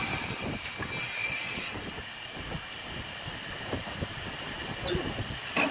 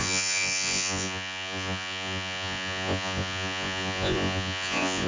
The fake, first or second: second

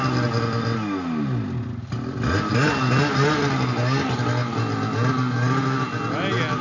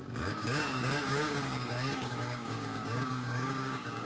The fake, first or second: second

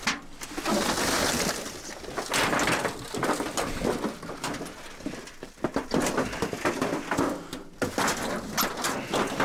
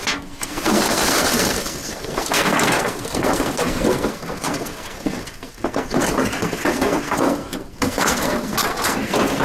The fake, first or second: second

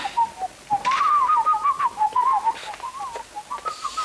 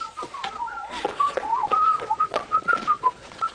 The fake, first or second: second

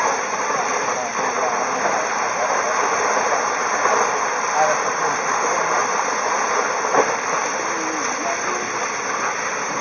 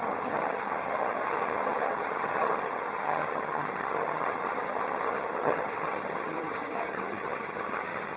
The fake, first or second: second